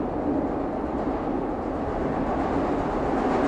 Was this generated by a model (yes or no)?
no